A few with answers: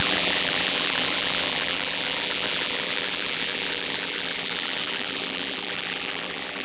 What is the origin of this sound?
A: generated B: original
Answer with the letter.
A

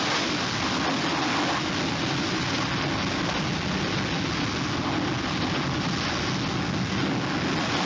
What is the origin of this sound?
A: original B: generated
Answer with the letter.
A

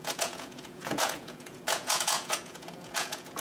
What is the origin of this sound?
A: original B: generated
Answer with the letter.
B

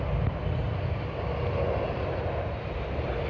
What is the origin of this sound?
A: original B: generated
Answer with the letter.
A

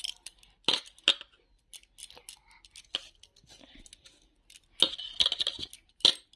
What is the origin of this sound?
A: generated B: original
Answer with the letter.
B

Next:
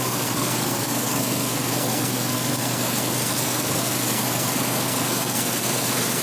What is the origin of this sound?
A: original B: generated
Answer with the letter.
B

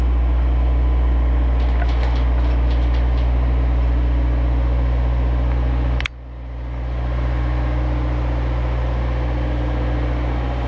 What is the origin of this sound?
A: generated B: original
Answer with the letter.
B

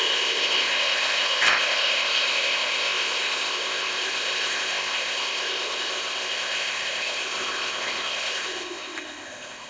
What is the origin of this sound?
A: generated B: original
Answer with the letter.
A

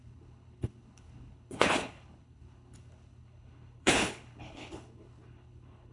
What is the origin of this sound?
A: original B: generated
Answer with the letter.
B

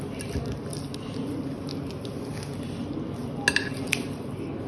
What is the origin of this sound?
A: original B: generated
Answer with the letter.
A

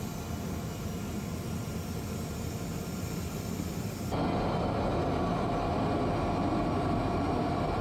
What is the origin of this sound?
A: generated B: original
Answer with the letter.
B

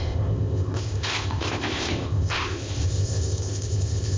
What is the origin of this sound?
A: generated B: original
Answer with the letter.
A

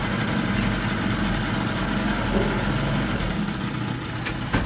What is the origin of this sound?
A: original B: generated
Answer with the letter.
A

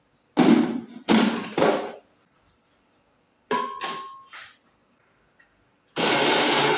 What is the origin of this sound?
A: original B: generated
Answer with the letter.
A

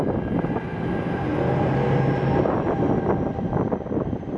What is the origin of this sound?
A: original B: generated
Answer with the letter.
A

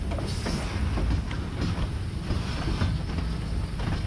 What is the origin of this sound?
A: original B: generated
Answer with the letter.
A